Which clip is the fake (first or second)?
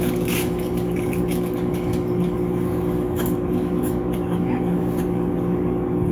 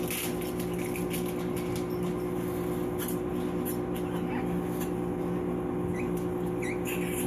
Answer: first